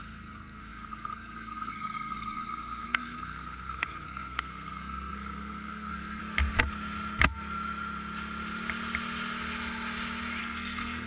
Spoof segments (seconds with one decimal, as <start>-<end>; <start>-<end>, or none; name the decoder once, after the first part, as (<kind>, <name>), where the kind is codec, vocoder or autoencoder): 0.0-6.2 (codec, SNAC); 10.4-11.1